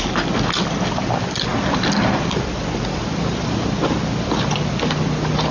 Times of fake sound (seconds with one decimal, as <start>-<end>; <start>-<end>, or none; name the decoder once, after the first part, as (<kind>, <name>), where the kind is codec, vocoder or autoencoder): none